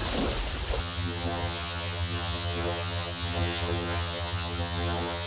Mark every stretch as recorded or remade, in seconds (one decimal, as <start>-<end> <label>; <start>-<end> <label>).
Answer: 0.0-0.8 recorded; 0.8-5.3 remade